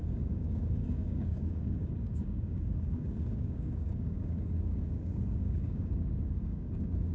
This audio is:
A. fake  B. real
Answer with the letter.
A